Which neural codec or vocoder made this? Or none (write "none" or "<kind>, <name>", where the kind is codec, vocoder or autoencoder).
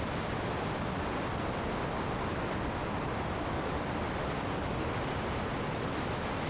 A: none